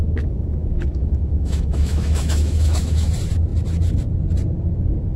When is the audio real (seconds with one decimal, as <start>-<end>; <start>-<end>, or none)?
3.1-5.2

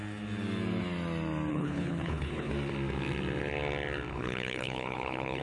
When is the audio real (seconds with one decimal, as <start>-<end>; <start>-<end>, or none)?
0.0-1.5; 2.5-4.1

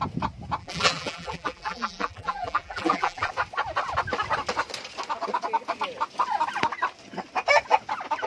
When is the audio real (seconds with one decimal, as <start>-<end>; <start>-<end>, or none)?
0.0-0.6; 3.3-8.3

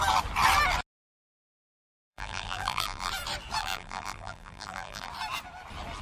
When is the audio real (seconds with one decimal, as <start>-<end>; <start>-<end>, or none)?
0.0-1.9; 3.1-3.6; 5.1-6.0